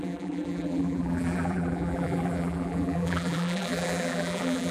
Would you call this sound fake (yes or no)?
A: yes